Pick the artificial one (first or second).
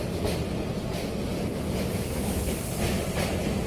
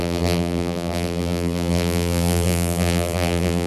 second